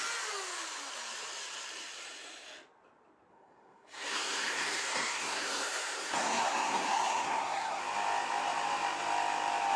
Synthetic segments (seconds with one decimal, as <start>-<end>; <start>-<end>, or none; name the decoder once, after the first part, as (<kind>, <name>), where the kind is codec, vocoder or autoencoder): 3.3-7.8 (codec, SNAC)